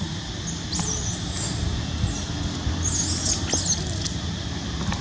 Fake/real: real